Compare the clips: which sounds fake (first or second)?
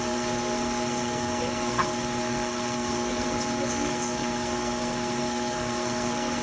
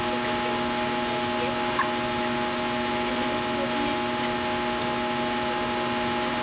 first